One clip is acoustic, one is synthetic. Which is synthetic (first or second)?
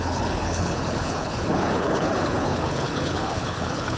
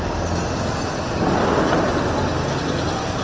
first